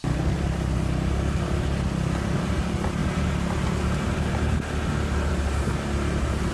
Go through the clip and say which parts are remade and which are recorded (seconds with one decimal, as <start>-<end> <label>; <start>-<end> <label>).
0.0-6.5 recorded